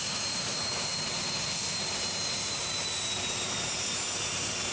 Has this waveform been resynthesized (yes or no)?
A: no